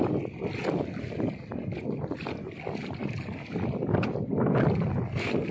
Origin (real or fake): real